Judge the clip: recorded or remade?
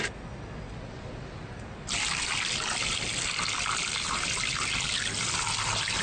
recorded